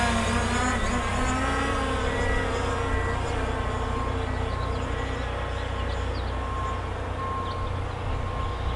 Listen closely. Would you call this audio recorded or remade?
recorded